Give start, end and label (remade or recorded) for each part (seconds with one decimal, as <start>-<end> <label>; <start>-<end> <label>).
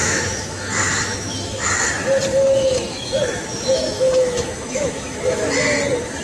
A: 0.0-1.7 remade; 1.7-2.3 recorded; 2.3-5.5 remade; 5.5-6.2 recorded